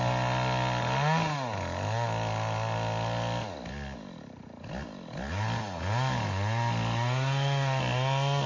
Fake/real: real